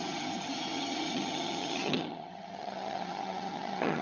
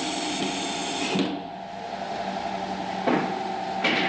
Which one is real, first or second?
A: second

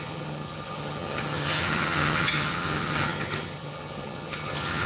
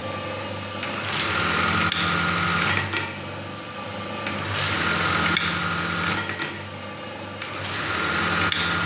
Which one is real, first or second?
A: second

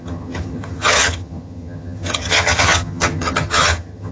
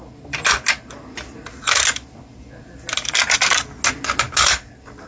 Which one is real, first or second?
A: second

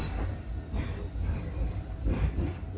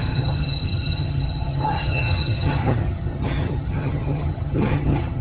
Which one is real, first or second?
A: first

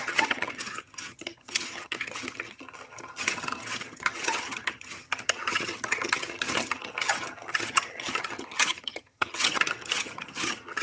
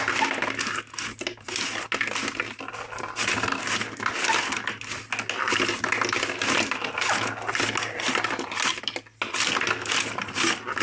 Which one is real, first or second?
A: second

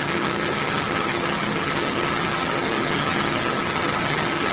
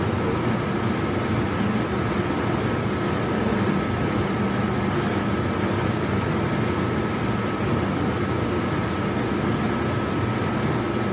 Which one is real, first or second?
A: second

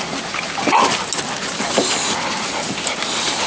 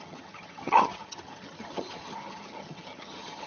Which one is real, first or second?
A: first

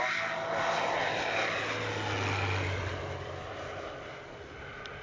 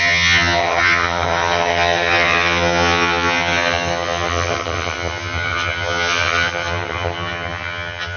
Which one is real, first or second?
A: first